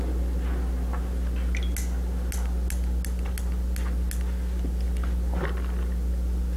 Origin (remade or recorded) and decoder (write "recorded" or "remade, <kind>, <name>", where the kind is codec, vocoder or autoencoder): recorded